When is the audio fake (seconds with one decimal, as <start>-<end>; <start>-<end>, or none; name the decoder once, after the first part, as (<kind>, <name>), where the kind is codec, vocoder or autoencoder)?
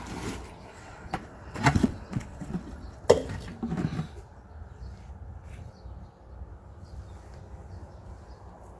0.7-3.0 (vocoder, WaveNeXt)